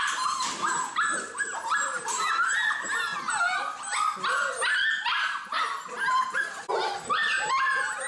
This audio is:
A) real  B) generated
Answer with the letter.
A